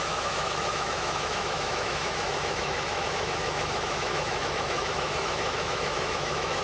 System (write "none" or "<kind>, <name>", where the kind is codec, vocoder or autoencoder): autoencoder, DAC-VAE